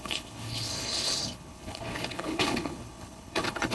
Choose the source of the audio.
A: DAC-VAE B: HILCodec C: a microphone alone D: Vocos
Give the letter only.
B